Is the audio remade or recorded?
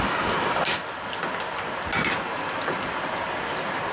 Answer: recorded